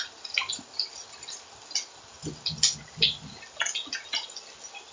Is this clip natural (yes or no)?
yes